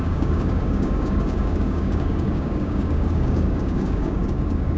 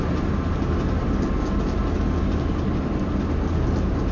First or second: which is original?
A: second